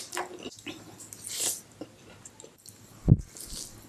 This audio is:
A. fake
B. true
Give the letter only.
B